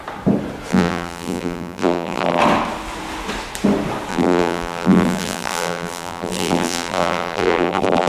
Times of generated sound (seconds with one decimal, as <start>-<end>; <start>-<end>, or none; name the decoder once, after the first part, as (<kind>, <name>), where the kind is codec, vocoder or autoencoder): 0.7-2.4 (vocoder, BigVGAN v2); 4.1-8.1